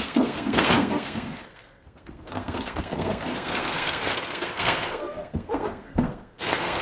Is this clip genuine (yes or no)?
no